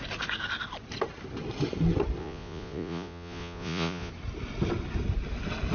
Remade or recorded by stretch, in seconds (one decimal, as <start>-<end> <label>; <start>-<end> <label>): 0.0-2.2 recorded; 2.2-4.1 remade; 4.1-5.7 recorded